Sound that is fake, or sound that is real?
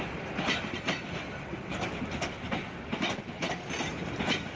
real